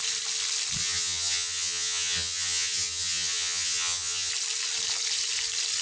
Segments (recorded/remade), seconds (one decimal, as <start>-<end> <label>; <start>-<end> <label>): 0.0-0.8 recorded; 0.8-4.3 remade; 4.3-5.8 recorded